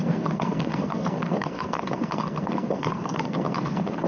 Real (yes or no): no